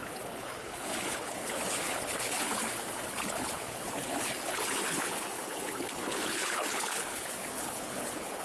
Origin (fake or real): fake